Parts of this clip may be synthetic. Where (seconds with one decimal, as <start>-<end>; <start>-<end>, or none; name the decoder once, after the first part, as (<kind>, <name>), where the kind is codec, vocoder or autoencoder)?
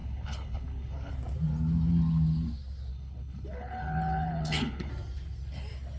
0.0-1.1 (codec, HILCodec); 2.9-4.9